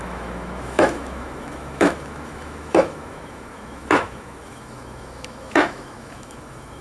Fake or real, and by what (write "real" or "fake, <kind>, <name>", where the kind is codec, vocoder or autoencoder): fake, autoencoder, DAC-VAE